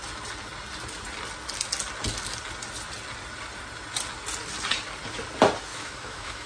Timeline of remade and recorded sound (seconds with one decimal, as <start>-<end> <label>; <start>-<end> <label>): 0.0-5.7 recorded; 5.7-6.5 remade